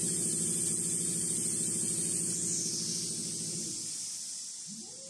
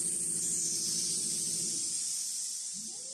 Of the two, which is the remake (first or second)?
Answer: second